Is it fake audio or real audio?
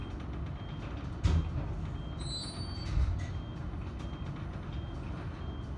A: real